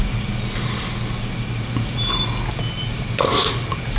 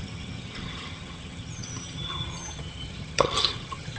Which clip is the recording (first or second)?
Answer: first